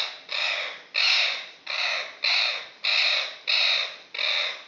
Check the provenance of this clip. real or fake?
real